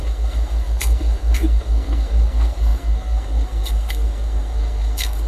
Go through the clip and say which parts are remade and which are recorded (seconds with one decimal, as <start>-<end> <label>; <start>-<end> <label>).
0.0-5.3 remade